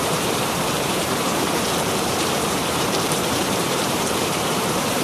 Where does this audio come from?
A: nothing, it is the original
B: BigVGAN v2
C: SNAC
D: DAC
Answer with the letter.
B